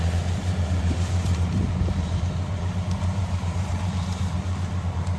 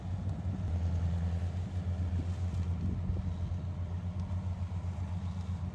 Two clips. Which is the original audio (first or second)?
second